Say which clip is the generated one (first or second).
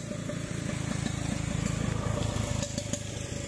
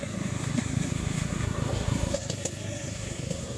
second